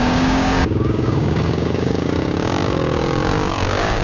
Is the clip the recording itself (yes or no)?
no